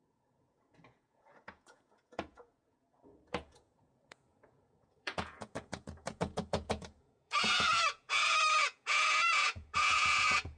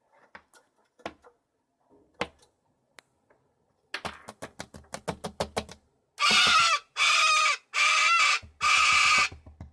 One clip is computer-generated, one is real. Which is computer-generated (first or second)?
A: first